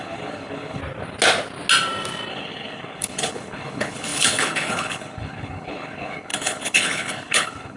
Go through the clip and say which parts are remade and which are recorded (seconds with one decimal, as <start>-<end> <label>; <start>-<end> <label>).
0.0-0.8 remade; 0.8-2.3 recorded; 2.3-7.8 remade